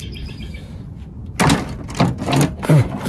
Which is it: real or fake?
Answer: real